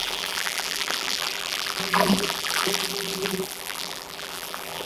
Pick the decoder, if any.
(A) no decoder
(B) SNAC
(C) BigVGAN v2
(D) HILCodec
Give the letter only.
C